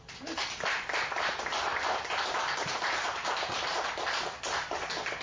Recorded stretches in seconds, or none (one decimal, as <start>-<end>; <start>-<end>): 0.0-2.7; 3.3-5.2